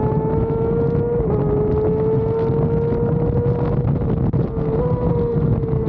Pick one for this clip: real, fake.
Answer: real